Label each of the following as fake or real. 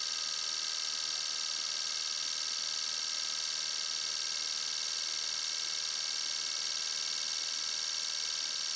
real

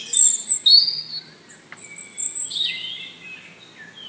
real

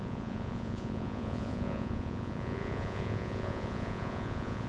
fake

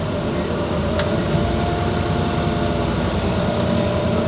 real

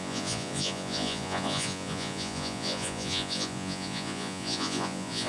fake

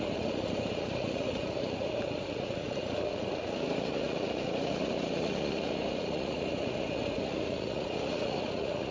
fake